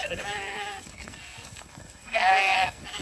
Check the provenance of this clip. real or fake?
fake